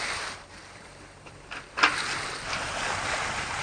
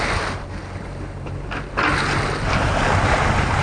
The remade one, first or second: first